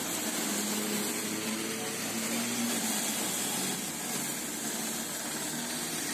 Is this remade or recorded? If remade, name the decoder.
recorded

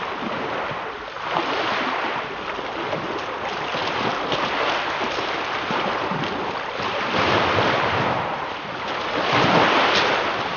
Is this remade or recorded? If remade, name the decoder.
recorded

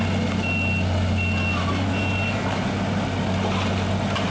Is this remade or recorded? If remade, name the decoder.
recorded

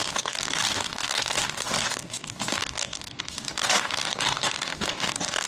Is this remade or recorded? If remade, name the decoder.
remade, codec, DAC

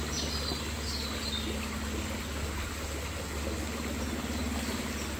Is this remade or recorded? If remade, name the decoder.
recorded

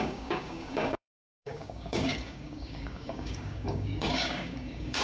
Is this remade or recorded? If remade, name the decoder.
remade, codec, DAC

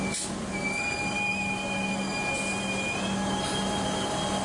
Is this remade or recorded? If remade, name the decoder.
recorded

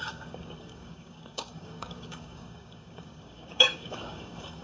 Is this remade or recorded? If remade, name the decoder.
remade, codec, DAC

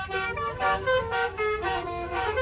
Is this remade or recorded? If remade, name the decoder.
remade, codec, DAC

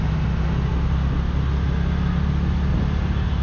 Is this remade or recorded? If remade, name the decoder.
recorded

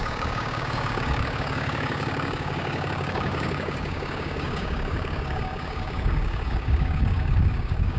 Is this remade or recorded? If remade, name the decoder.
remade, codec, DAC